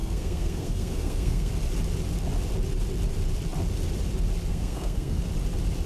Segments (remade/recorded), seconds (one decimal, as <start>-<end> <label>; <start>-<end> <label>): 0.0-1.5 remade; 1.5-4.5 recorded; 4.5-5.2 remade; 5.2-5.9 recorded